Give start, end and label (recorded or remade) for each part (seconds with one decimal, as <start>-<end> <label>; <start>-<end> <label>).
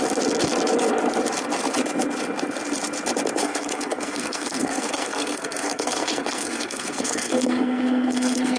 0.0-3.4 recorded; 3.4-8.6 remade